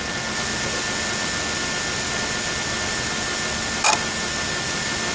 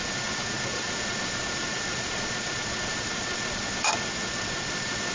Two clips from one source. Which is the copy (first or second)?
second